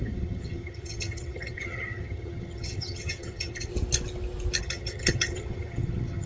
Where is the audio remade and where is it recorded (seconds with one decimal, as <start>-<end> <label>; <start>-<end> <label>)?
0.0-3.7 remade; 3.7-4.6 recorded; 4.6-6.3 remade